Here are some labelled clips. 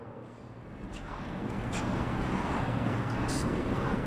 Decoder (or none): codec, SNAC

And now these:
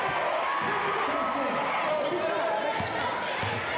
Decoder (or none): none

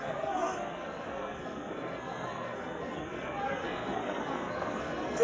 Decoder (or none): codec, SNAC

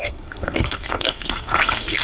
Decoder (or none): codec, SNAC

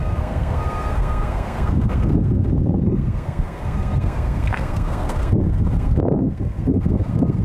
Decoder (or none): codec, SNAC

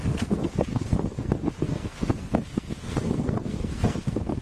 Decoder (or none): codec, SNAC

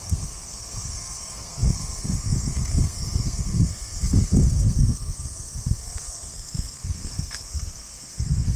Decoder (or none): codec, SNAC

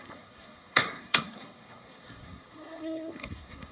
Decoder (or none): codec, SNAC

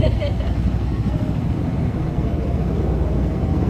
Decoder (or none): codec, SNAC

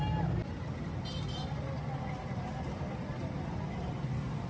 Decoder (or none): none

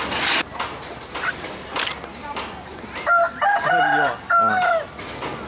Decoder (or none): none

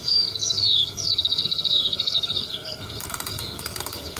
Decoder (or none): codec, SNAC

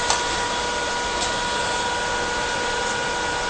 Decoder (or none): none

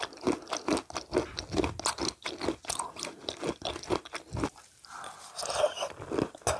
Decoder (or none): none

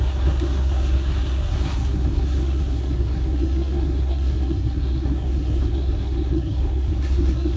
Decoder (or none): codec, SNAC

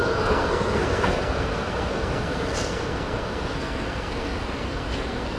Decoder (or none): codec, SNAC